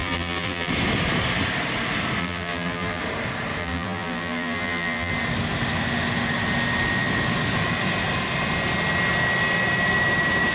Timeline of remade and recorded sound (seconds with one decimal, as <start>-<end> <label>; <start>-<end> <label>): 0.0-0.7 remade; 0.7-2.2 recorded; 2.2-3.0 remade; 3.0-3.6 recorded; 3.6-5.1 remade; 5.1-10.5 recorded